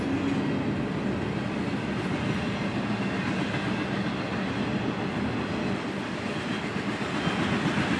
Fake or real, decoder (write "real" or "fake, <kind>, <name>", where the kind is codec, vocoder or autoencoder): real